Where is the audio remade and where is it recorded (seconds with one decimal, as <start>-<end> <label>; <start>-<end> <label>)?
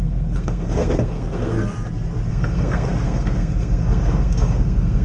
0.0-1.6 remade; 1.6-2.3 recorded; 2.3-5.0 remade